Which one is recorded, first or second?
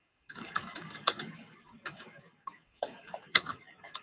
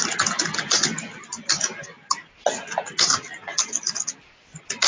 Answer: second